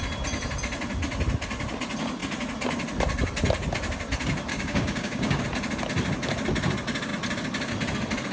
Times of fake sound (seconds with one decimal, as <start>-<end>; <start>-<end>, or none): 4.5-5.4